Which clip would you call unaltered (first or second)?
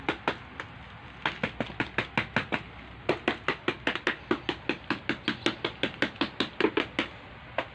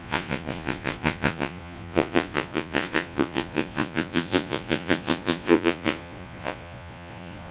first